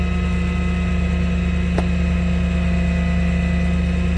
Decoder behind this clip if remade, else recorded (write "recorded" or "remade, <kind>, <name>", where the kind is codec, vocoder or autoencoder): recorded